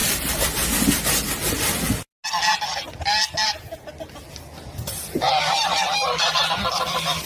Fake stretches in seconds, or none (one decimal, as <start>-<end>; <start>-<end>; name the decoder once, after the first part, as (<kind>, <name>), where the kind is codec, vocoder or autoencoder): none